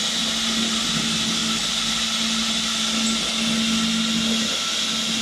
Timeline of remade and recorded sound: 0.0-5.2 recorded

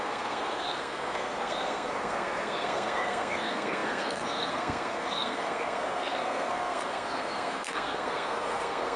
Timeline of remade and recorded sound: 0.0-9.0 remade

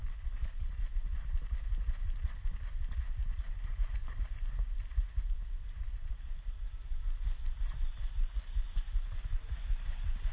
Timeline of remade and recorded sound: 0.0-0.7 remade; 0.7-10.3 recorded

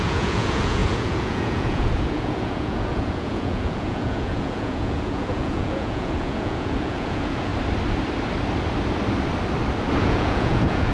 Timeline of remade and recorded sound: 0.0-7.5 remade; 7.5-10.0 recorded; 10.0-10.9 remade

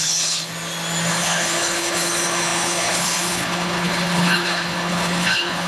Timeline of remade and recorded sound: 0.0-0.5 remade; 0.5-1.1 recorded; 1.1-5.7 remade

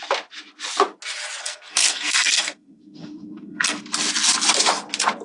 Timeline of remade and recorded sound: 0.0-1.4 recorded; 1.4-3.8 remade; 3.8-5.2 recorded

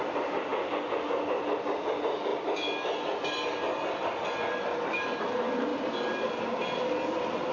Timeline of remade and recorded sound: 0.0-7.5 recorded